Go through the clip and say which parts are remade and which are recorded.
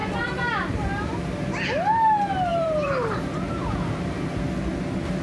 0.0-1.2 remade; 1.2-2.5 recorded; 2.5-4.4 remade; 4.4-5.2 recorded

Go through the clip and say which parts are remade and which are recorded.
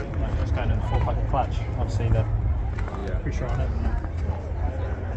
0.0-0.4 recorded; 0.4-1.1 remade; 1.1-5.2 recorded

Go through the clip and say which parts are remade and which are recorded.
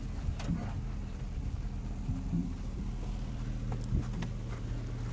0.0-2.4 recorded; 2.4-3.7 remade; 3.7-5.1 recorded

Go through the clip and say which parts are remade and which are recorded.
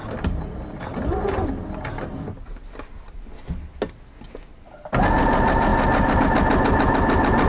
0.0-7.5 recorded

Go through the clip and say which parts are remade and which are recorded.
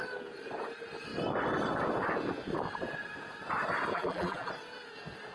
0.0-3.9 recorded; 3.9-4.5 remade; 4.5-5.3 recorded